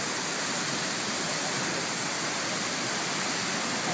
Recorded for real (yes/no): yes